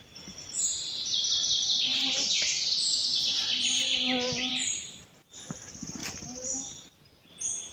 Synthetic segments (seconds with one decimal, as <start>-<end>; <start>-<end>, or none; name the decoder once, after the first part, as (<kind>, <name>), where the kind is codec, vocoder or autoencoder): none